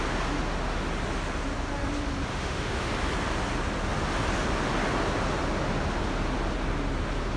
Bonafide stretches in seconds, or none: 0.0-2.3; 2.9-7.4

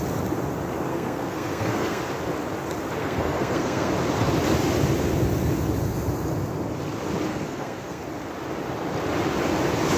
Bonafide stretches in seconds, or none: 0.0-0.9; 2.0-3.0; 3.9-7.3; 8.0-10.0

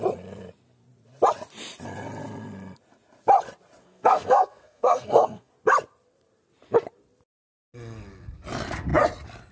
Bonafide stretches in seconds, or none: 0.0-3.8; 5.5-9.5

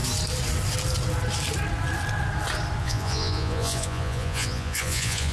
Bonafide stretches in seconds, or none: 0.0-2.8

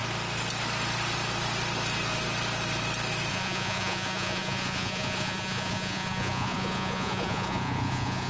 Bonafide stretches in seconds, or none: 0.0-3.3